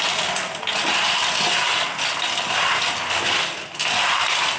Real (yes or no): yes